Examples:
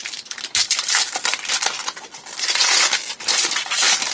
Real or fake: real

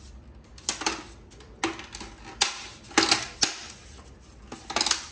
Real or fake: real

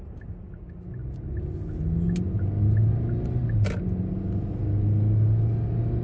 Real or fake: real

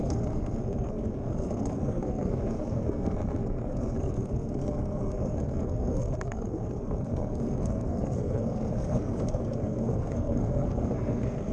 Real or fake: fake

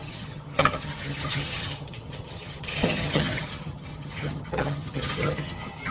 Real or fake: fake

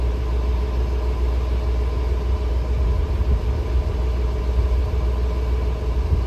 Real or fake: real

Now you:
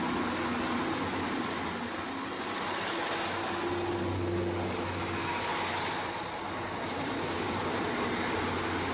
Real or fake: real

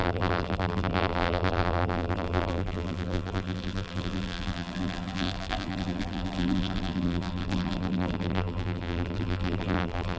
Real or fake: fake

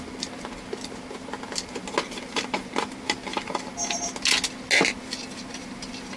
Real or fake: real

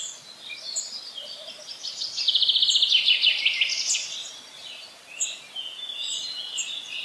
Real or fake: real